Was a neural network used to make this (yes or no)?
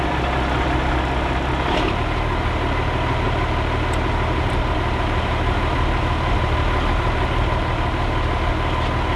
no